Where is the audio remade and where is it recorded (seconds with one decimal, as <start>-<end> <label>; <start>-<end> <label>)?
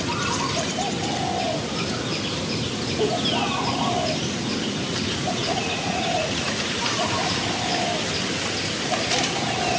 0.0-5.4 recorded; 5.4-6.8 remade; 6.8-9.8 recorded